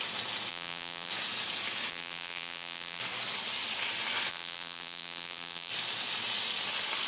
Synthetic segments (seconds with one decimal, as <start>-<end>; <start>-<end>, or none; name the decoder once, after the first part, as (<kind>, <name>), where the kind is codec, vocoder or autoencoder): 0.5-1.1 (vocoder, BigVGAN v2); 1.9-3.0; 4.3-5.7